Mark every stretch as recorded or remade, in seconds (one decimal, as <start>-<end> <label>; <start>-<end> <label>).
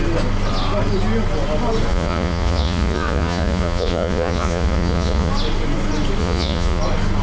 0.0-1.9 recorded; 1.9-5.3 remade; 5.3-6.2 recorded; 6.2-6.8 remade; 6.8-7.2 recorded